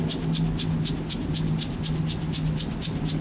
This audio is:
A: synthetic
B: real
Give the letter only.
B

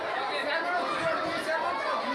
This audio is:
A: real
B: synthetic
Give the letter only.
A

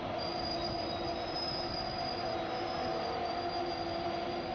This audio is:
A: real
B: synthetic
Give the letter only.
A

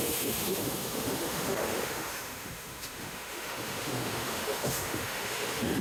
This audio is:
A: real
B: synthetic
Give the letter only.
B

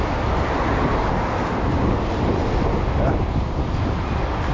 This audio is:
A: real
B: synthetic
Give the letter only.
A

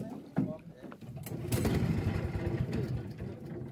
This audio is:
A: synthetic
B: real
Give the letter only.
B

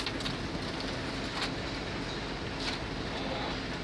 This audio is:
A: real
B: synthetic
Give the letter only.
A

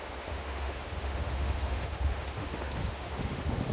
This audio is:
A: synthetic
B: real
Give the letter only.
A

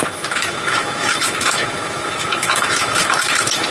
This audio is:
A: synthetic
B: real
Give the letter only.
A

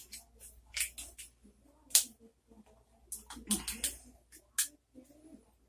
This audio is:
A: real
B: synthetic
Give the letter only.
A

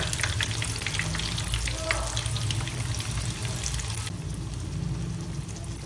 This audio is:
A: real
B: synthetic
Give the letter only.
A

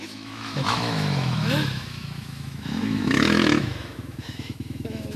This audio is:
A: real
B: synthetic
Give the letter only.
B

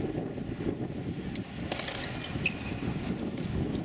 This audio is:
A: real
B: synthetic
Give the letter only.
A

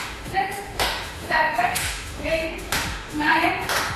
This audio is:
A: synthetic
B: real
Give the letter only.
A